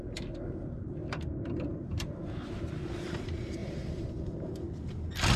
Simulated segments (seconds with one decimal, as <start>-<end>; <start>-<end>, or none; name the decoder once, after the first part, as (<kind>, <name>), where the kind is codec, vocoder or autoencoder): 1.0-2.1 (vocoder, BigVGAN v2); 3.6-4.3